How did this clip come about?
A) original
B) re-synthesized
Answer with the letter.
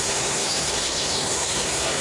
B